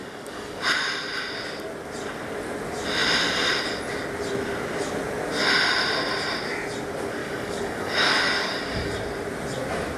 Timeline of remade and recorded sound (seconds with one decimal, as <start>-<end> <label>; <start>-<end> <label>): 0.0-0.6 remade; 0.6-7.2 recorded; 7.2-8.9 remade; 8.9-10.0 recorded